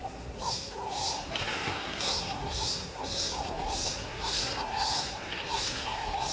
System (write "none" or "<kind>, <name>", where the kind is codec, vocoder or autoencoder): codec, SNAC